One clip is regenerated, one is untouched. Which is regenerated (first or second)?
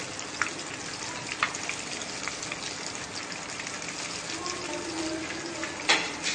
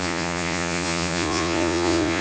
second